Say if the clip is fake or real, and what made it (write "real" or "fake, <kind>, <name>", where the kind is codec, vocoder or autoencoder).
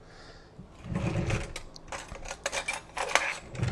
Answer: real